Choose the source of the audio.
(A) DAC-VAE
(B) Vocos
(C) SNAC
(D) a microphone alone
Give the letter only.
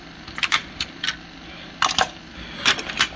D